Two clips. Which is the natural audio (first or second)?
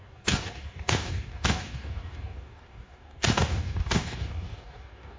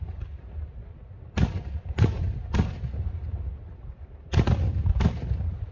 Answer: second